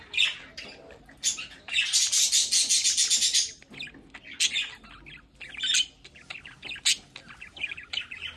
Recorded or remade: recorded